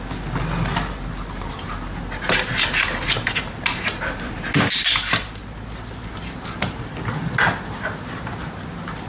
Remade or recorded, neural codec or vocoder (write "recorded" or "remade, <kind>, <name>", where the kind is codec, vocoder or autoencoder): recorded